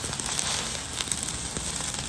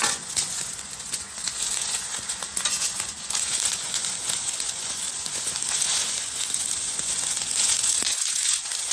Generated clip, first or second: second